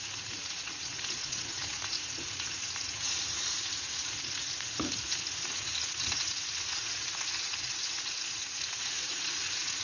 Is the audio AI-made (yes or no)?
yes